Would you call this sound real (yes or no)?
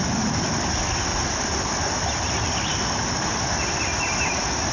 yes